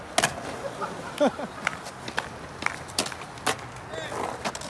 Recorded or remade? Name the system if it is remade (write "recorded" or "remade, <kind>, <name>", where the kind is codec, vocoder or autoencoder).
recorded